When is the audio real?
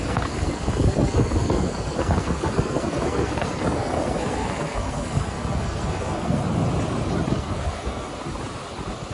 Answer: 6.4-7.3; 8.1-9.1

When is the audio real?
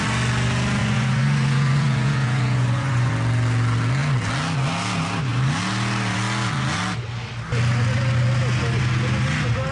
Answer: 0.0-0.8; 3.1-9.7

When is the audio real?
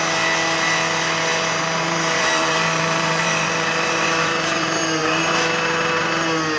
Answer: 0.0-1.3; 5.3-6.6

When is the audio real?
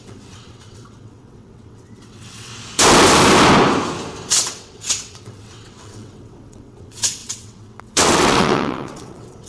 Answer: 2.5-4.3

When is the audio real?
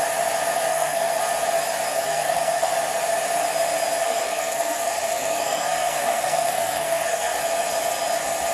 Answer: 0.0-0.7; 1.2-1.9; 2.7-4.0; 7.4-8.5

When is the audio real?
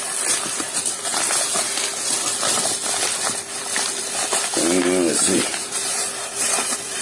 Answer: 0.0-5.2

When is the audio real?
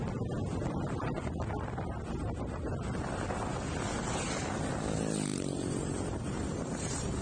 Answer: 0.0-5.3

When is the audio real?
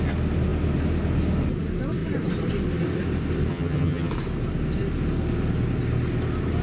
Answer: 0.0-3.5; 4.1-6.6